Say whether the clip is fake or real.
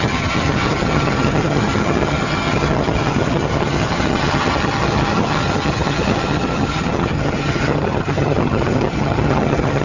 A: fake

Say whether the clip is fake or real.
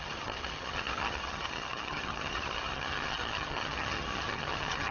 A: fake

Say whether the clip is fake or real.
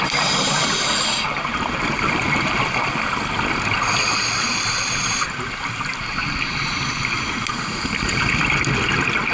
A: real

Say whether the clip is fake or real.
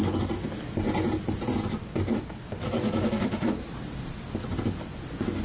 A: real